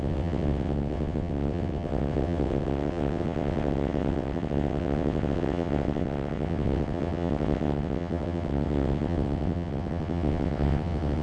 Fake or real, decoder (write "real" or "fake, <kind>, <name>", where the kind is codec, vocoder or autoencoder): fake, vocoder, WaveNeXt